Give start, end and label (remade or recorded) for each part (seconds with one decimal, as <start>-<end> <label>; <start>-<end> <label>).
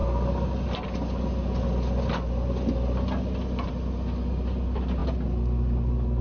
0.0-6.2 recorded